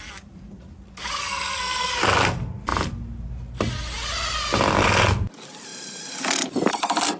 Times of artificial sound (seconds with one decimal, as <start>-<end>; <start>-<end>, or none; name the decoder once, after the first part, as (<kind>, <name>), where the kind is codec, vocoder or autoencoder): 1.2-1.9 (codec, SNAC)